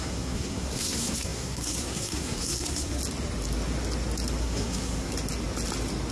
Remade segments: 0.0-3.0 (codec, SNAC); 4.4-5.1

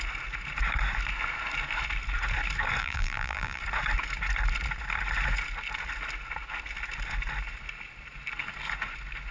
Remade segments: 2.8-3.6 (vocoder, BigVGAN v2)

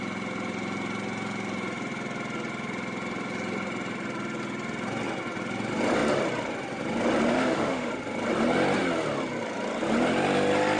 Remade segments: 7.3-7.9 (autoencoder, DAC-VAE)

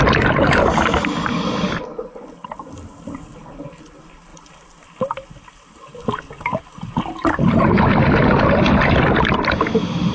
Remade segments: none